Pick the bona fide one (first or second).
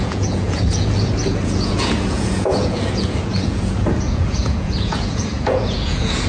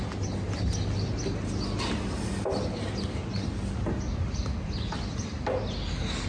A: second